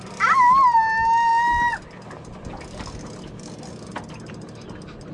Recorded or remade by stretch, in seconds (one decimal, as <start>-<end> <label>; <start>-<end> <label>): 0.0-5.1 recorded